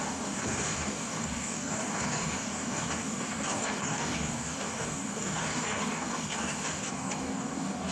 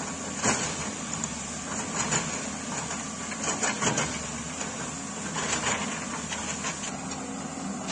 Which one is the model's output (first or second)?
first